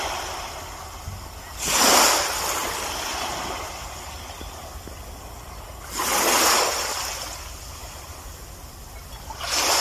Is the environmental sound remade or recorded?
recorded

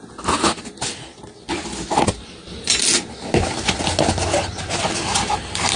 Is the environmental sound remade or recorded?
recorded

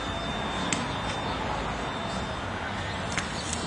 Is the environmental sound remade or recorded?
recorded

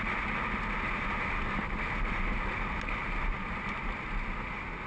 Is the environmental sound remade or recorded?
recorded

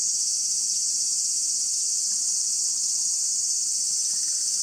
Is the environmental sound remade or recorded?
recorded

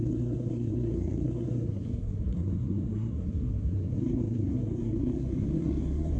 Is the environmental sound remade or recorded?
remade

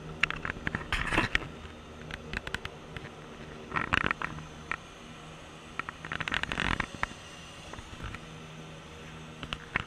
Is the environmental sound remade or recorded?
recorded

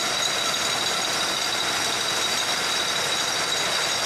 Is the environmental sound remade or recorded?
recorded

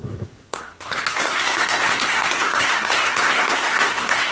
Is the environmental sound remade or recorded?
remade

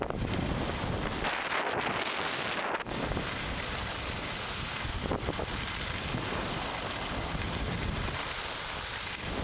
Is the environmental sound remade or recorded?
recorded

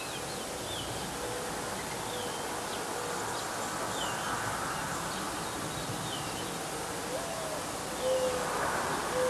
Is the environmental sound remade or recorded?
recorded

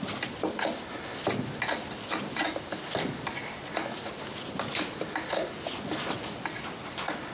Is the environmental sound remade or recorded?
recorded